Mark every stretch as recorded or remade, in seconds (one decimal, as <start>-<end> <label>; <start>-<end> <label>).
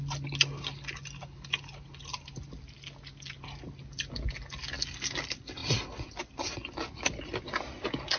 0.0-8.2 recorded